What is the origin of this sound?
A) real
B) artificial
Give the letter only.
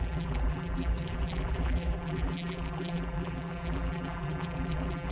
B